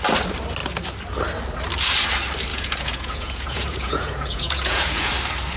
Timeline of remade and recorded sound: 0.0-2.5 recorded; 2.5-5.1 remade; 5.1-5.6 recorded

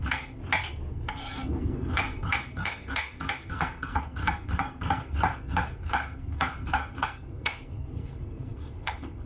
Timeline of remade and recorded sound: 0.0-0.4 remade; 0.4-0.9 recorded; 0.9-9.3 remade